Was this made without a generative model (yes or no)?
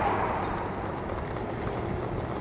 yes